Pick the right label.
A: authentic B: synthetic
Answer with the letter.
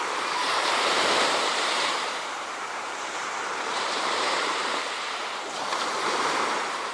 B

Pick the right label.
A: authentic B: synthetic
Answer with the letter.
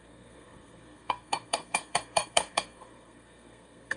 B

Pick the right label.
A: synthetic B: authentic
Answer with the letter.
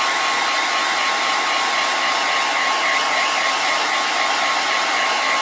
B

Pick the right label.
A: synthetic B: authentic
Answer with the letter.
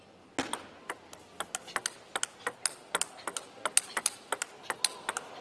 B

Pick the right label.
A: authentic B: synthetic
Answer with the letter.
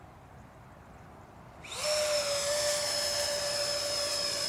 A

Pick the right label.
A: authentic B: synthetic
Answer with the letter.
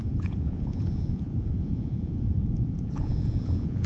B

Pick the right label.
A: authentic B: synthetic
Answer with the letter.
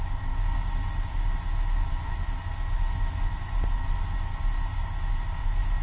A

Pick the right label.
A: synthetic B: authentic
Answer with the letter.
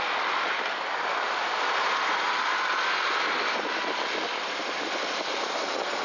B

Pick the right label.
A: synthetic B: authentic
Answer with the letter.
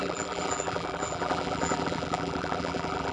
A